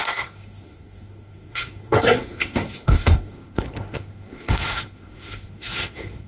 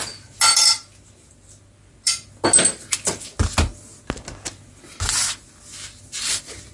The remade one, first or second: first